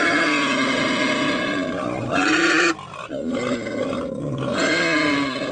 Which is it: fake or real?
real